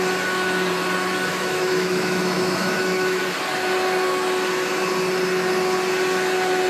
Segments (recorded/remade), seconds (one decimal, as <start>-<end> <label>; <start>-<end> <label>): 0.0-1.3 recorded; 1.3-3.2 remade; 3.2-6.7 recorded